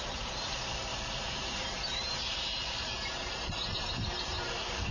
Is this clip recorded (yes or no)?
no